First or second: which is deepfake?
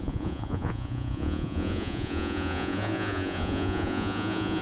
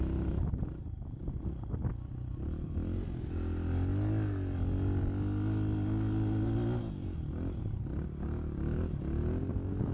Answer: first